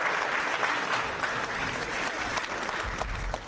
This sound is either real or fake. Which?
real